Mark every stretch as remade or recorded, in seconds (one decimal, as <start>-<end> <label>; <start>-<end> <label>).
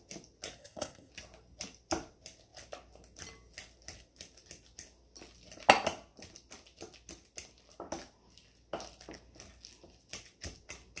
0.0-0.6 recorded; 0.6-1.1 remade; 1.1-11.0 recorded